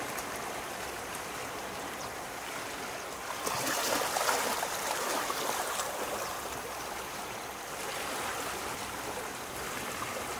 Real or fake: fake